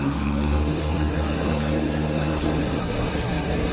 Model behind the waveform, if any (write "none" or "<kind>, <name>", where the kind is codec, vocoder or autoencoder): codec, SNAC